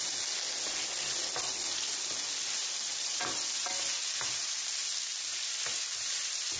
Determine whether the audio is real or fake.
real